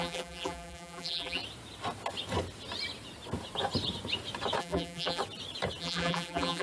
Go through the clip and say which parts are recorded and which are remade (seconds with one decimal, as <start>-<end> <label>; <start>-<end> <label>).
0.0-1.4 remade; 1.4-4.6 recorded; 4.6-5.2 remade; 5.2-5.8 recorded; 5.8-6.6 remade